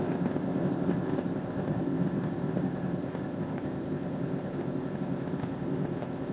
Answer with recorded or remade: remade